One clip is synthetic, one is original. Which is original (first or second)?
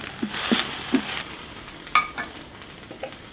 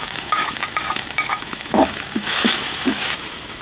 first